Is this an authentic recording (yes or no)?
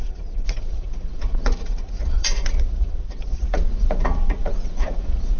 no